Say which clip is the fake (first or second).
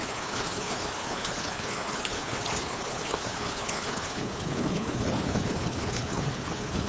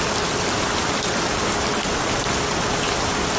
first